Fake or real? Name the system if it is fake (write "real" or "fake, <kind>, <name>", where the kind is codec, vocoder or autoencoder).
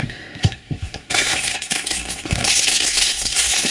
fake, codec, SNAC